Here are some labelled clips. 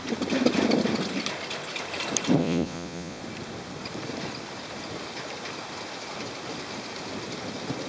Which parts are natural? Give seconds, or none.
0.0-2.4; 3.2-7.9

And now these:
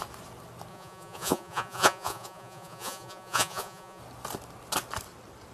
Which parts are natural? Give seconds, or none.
0.0-0.7; 4.0-5.5

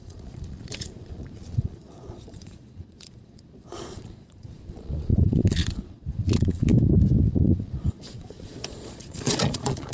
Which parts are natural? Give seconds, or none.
6.7-7.3